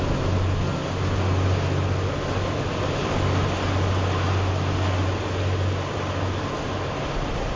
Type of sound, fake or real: real